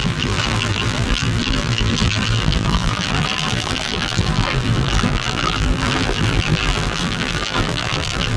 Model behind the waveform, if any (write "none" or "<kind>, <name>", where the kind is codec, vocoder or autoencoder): vocoder, BigVGAN v2